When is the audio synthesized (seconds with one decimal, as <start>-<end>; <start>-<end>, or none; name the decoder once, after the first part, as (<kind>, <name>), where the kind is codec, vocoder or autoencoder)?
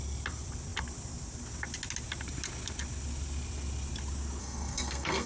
4.4-5.3 (codec, SNAC)